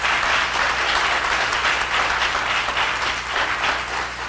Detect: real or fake real